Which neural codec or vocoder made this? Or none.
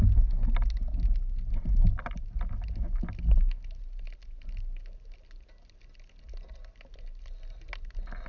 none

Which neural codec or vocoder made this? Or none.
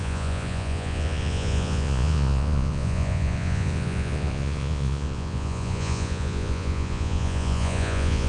vocoder, Vocos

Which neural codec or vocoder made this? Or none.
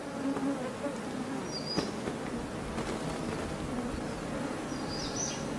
none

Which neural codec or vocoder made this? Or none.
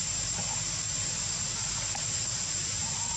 none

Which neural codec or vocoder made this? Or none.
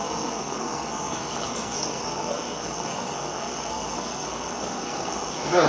codec, SNAC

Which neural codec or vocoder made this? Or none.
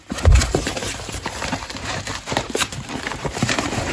vocoder, BigVGAN v2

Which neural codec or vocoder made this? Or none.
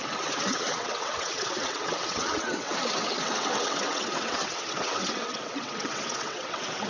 vocoder, WaveNeXt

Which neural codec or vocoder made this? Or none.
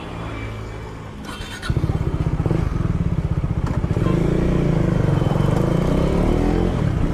none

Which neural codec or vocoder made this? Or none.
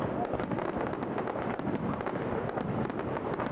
none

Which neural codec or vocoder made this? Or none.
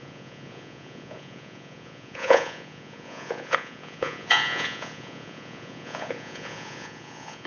vocoder, Vocos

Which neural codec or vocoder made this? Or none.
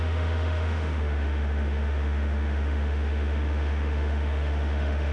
autoencoder, DAC-VAE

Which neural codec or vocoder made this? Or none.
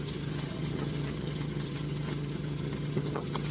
vocoder, HiFi-GAN